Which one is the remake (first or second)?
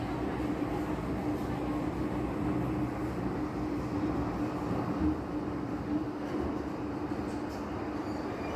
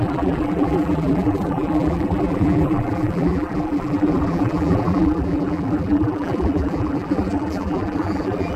second